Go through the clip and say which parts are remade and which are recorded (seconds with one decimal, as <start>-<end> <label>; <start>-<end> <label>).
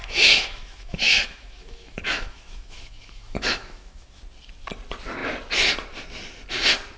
0.0-4.2 remade; 4.2-7.0 recorded